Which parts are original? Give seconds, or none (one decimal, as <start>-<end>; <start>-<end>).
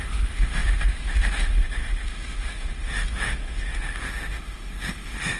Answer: none